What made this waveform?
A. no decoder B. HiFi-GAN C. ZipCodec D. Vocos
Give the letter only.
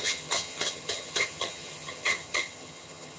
B